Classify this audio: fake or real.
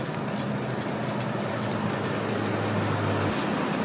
real